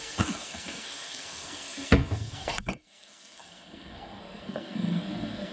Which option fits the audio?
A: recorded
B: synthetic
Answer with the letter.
B